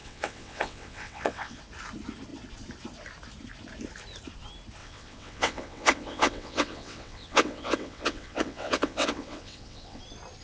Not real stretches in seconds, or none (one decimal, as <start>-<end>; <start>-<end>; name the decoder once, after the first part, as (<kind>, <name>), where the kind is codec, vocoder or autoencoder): 0.0-1.6 (vocoder, WaveNeXt); 4.8-10.0